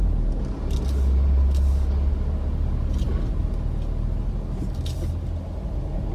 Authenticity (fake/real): real